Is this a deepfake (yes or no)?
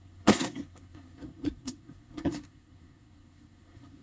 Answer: yes